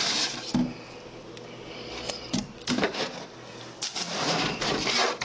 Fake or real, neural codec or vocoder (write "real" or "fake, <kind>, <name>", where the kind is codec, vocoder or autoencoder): real